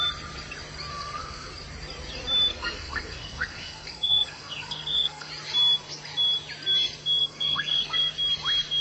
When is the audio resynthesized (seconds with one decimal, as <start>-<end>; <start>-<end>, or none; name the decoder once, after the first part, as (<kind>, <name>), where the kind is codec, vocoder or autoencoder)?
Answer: 0.9-1.5 (codec, SNAC); 2.5-5.3; 7.2-8.1